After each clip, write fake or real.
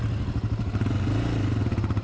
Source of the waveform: real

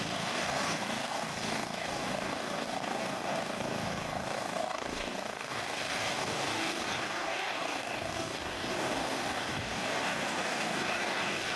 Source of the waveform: fake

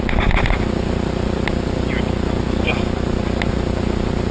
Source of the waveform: real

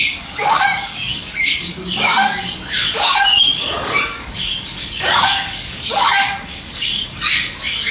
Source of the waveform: fake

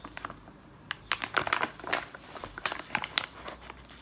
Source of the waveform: real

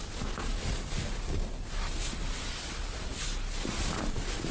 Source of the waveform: real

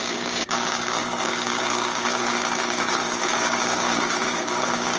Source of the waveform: fake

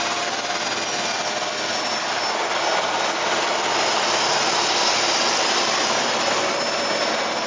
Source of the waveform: real